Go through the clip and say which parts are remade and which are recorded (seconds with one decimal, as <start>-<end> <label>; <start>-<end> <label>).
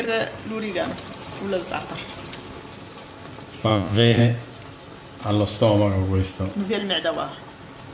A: 0.0-3.7 recorded; 3.7-4.2 remade; 4.2-7.9 recorded